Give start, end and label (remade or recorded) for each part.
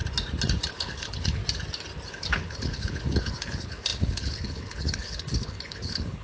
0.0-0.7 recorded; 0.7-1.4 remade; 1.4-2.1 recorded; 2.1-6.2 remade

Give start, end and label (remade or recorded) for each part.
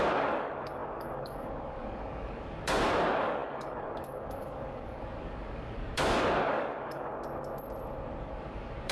0.0-7.1 remade; 7.1-8.2 recorded; 8.2-8.9 remade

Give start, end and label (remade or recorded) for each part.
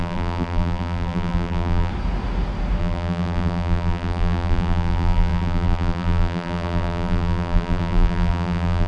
0.0-1.9 remade; 1.9-2.8 recorded; 2.8-8.9 remade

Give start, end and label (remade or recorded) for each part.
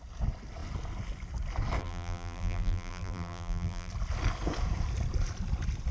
0.0-1.8 recorded; 1.8-3.9 remade; 3.9-5.9 recorded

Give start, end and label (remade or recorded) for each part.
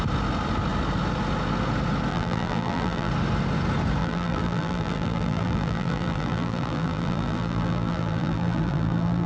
0.0-2.1 recorded; 2.1-3.1 remade; 3.1-4.0 recorded; 4.0-9.3 remade